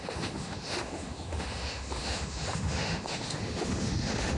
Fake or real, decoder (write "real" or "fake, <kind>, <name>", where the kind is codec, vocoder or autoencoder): fake, autoencoder, DAC-VAE